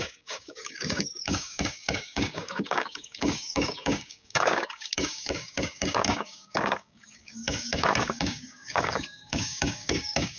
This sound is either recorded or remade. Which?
remade